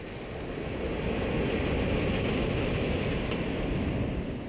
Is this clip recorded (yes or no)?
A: yes